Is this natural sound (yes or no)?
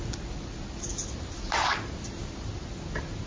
yes